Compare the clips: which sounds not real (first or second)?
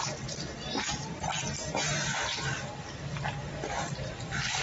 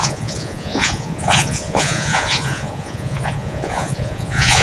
second